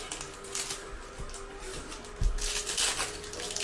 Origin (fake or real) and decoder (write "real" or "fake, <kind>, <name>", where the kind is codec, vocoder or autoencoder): real